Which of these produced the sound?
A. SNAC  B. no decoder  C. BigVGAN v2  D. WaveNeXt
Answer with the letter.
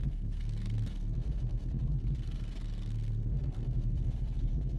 A